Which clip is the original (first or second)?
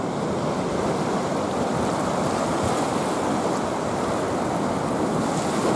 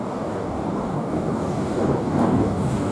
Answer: first